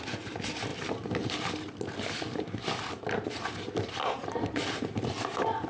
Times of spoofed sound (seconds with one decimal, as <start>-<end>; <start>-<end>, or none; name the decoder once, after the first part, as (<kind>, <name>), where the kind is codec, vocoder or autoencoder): none